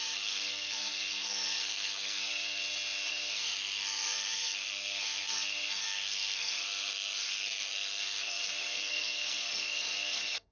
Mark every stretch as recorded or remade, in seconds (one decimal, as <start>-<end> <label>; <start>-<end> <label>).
0.0-2.6 remade; 2.6-3.1 recorded; 3.1-10.5 remade